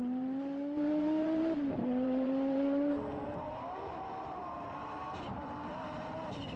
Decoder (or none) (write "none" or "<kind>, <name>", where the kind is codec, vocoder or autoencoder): vocoder, BigVGAN v2